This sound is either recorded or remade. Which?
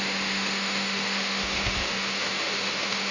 remade